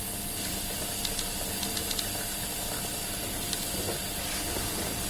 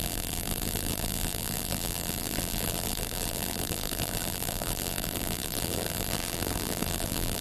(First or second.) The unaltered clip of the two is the first